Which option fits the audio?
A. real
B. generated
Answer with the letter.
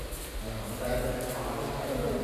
A